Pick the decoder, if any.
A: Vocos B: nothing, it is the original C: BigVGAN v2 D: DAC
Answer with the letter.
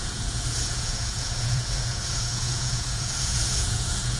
A